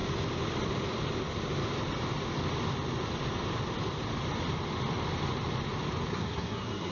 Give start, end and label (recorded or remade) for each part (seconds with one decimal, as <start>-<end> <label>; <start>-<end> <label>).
0.0-6.1 recorded; 6.1-6.9 remade